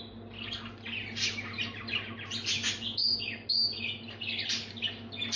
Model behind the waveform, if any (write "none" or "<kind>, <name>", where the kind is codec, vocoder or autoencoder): none